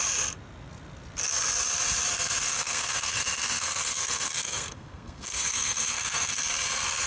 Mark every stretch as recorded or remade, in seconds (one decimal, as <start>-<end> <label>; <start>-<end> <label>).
0.0-2.1 recorded; 2.1-6.4 remade; 6.4-7.1 recorded